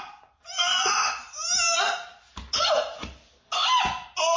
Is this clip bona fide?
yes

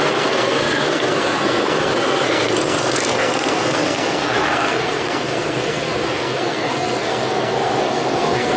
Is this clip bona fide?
no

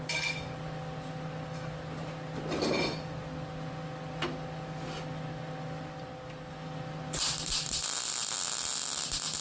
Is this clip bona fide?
yes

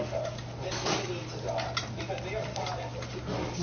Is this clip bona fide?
yes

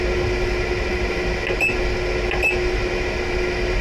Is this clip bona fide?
yes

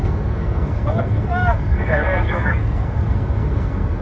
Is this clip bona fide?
no